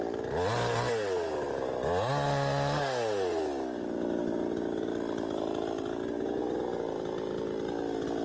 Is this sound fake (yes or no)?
no